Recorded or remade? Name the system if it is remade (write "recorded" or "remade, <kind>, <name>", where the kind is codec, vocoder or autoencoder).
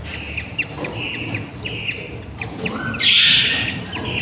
recorded